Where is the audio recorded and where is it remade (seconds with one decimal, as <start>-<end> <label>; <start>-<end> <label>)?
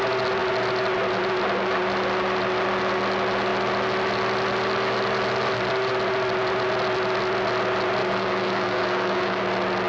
0.0-8.0 recorded; 8.0-9.4 remade; 9.4-9.9 recorded